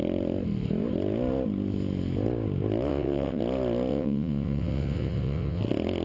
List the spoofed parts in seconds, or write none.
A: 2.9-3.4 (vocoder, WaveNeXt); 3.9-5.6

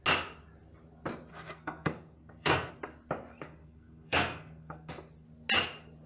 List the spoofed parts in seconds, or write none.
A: 1.3-2.7 (codec, SNAC); 3.6-4.9

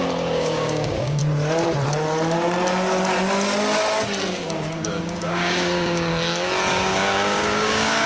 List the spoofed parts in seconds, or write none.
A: 0.0-1.2 (codec, DAC); 4.3-6.1; 6.7-8.1